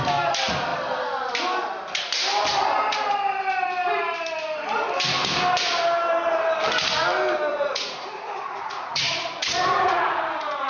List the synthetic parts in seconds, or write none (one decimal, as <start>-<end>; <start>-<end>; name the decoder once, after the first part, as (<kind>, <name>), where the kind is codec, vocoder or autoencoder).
7.5-10.7 (vocoder, Vocos)